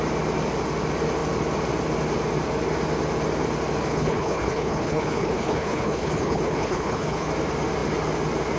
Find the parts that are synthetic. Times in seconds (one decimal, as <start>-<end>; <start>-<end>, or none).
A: 3.9-7.3